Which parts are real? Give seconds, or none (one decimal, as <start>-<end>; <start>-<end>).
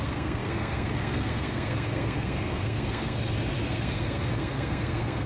3.2-3.7